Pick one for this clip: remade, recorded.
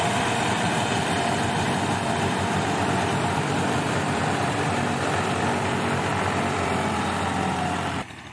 remade